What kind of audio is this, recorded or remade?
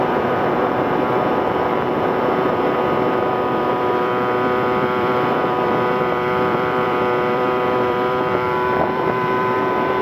remade